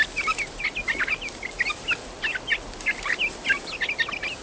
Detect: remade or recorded recorded